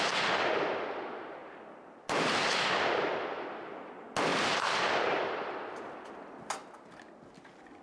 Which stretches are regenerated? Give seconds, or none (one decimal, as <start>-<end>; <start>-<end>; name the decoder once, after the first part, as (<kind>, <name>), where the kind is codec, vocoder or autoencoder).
1.4-3.9 (vocoder, BigVGAN v2); 4.3-7.0